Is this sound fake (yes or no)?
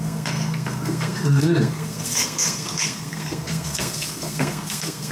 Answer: yes